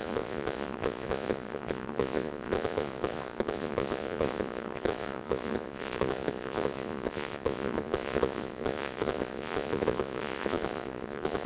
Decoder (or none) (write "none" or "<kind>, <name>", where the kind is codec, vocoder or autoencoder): vocoder, Vocos